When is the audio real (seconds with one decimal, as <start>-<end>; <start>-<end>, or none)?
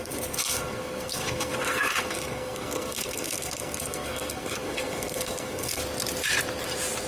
5.8-7.1